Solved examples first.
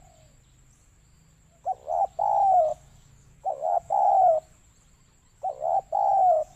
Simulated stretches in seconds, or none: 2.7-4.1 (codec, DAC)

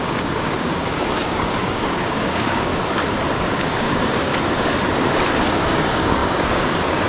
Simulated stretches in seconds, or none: 0.0-2.7 (codec, DAC); 3.3-4.3; 5.5-7.1